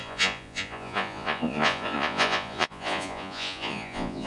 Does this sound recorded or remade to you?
remade